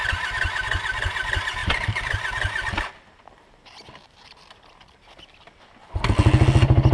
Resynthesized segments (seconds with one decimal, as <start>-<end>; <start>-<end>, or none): 0.0-0.6; 1.6-5.6

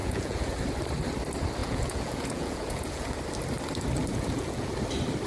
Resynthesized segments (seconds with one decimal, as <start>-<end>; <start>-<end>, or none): 0.0-0.6; 1.6-3.1; 4.1-4.7

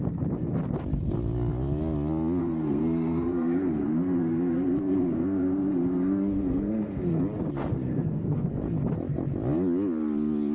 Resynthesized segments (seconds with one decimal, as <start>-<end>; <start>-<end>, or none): 2.4-7.2; 7.7-8.5

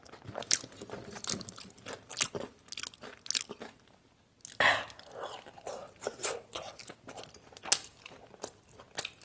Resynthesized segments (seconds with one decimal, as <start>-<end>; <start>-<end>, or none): none

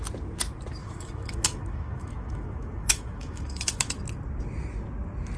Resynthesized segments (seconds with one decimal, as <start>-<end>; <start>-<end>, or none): 0.8-4.0

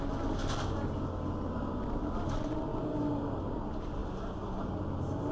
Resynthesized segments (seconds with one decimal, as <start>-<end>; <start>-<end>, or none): none

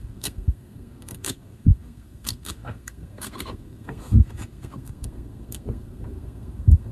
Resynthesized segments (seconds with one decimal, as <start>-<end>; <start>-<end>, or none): 0.0-6.9